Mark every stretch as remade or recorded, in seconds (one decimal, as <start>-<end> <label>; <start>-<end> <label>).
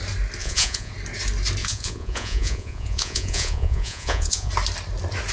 0.0-0.4 recorded; 0.4-0.9 remade; 0.9-1.6 recorded; 1.6-4.5 remade; 4.5-5.3 recorded